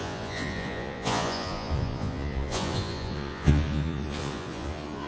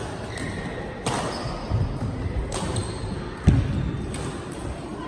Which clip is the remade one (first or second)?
first